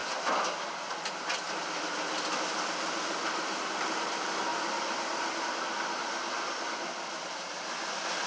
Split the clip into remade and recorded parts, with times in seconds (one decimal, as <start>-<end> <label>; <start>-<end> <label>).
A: 0.0-8.3 recorded